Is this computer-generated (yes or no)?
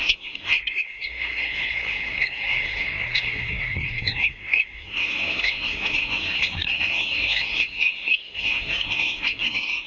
yes